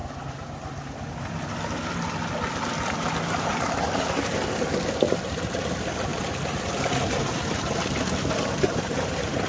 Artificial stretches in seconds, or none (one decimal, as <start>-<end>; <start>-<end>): 3.3-9.5